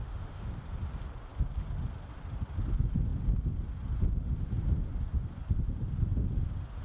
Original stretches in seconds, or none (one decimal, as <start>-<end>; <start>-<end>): 0.5-6.8